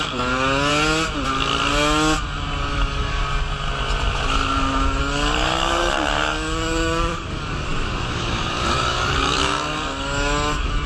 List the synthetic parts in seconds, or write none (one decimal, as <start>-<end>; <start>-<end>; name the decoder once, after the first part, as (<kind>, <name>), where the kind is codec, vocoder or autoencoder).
0.0-0.7 (codec, DAC); 2.7-3.2; 5.0-10.9